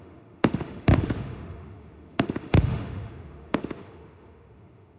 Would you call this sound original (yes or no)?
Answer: no